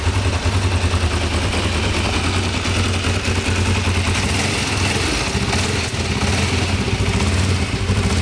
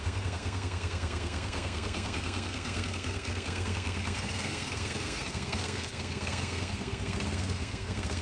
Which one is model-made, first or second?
second